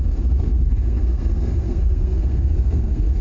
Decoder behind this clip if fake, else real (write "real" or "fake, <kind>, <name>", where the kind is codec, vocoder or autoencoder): fake, codec, SNAC